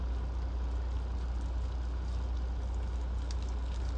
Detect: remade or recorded recorded